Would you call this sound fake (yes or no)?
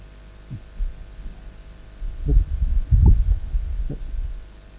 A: no